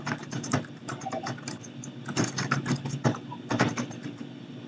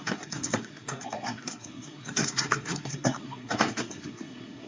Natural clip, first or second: first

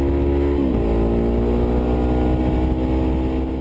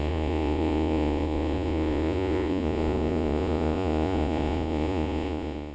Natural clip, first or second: first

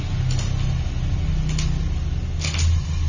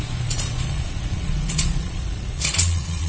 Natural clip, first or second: first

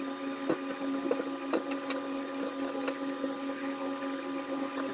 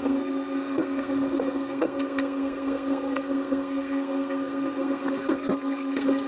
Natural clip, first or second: first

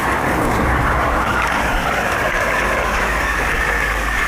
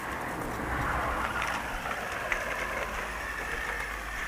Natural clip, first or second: second